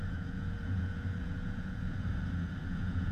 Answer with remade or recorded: remade